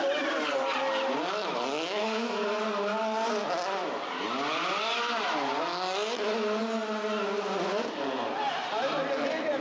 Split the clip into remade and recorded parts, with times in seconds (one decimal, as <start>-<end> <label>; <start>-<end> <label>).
0.0-2.0 recorded; 2.0-2.6 remade; 2.6-9.6 recorded